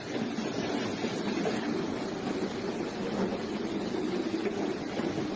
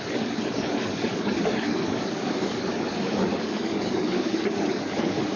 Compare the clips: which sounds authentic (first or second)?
first